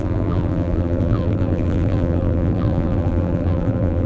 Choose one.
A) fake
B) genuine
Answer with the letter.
A